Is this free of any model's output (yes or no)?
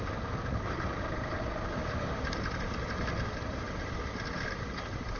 yes